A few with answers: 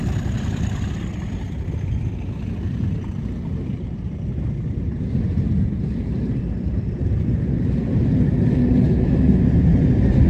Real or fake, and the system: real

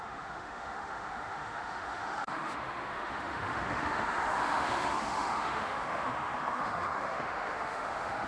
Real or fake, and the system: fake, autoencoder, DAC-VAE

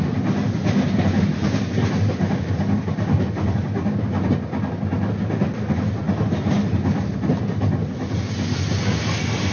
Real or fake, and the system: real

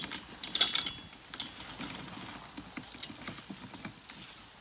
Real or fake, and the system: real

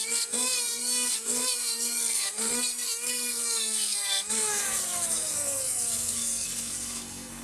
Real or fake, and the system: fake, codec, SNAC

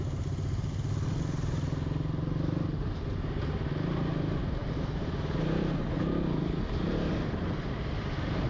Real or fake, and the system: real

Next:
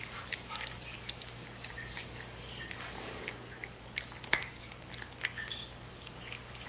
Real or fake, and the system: fake, codec, DAC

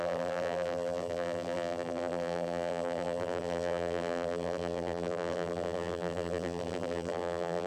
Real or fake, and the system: fake, vocoder, BigVGAN v2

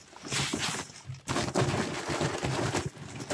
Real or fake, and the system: real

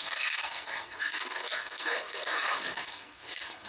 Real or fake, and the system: fake, codec, SNAC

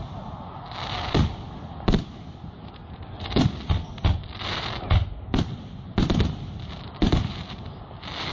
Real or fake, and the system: real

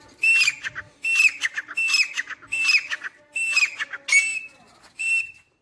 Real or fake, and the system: real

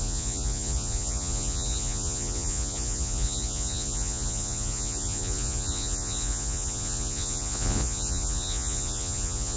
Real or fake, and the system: fake, vocoder, Vocos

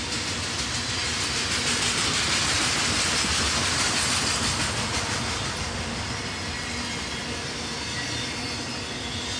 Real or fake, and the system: real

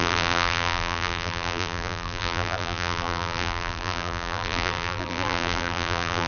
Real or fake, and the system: fake, vocoder, BigVGAN v2